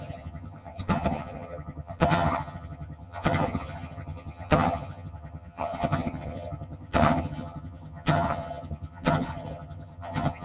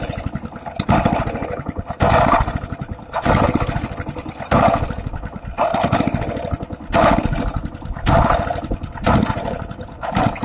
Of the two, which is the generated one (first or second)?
first